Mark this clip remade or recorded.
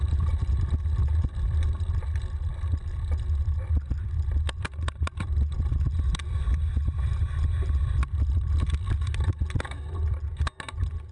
recorded